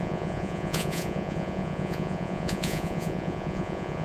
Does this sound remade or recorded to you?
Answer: remade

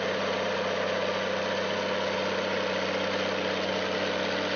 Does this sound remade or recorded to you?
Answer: recorded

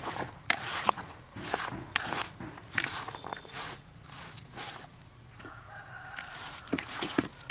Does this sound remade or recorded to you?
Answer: remade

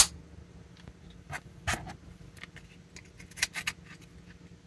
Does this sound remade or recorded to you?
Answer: recorded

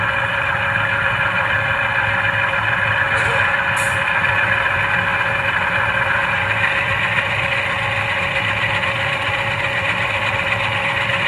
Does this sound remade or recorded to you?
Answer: recorded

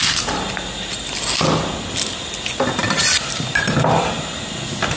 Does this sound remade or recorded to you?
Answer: recorded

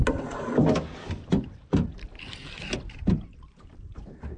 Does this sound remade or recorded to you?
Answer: recorded